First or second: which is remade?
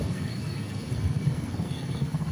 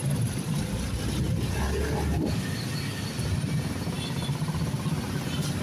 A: first